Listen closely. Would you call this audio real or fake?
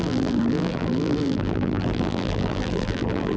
fake